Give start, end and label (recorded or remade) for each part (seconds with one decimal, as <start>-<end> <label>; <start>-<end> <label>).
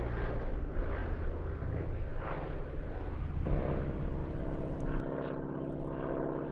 0.0-6.5 recorded